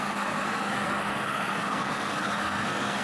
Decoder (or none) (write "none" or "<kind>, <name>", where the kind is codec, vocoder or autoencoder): codec, SNAC